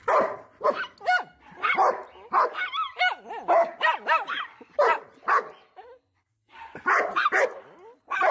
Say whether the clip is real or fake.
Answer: real